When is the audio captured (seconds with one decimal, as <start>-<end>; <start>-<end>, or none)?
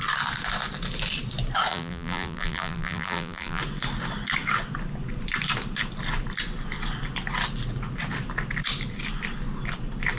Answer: 0.0-1.7; 3.6-10.2